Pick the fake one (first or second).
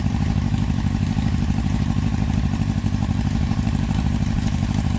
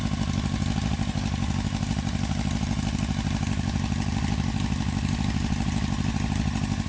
first